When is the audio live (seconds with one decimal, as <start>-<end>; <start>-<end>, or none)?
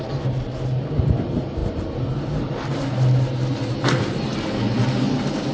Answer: 0.0-5.5